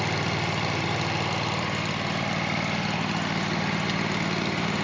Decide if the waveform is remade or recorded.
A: recorded